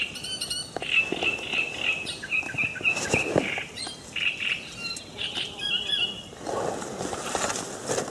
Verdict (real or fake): real